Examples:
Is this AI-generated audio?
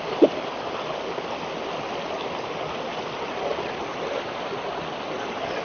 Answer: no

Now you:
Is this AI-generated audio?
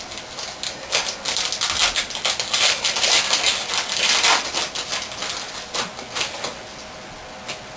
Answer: no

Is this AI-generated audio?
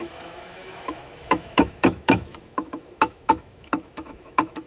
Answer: yes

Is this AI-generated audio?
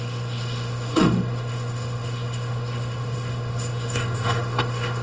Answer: yes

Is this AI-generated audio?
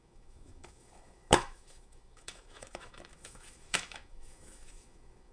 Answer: yes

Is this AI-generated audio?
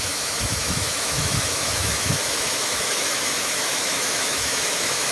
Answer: yes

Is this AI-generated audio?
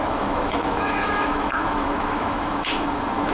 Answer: yes